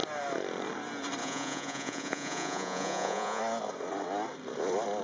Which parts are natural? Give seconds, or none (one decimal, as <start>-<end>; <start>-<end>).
0.0-1.2; 3.4-5.0